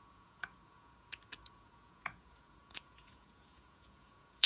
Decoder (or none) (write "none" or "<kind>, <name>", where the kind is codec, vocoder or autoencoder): vocoder, Vocos